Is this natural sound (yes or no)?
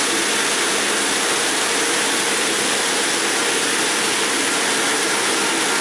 yes